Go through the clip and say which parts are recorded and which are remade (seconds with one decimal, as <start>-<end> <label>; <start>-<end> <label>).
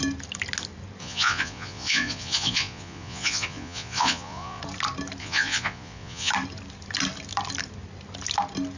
0.0-1.0 recorded; 1.0-4.6 remade; 4.6-5.2 recorded; 5.2-6.3 remade; 6.3-8.8 recorded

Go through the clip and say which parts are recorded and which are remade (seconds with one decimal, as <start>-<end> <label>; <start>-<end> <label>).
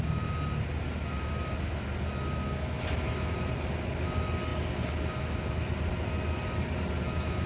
0.0-7.5 recorded